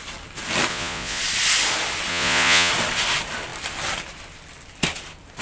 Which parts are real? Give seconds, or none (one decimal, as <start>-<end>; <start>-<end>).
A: 0.0-0.7; 1.2-2.1; 2.7-5.4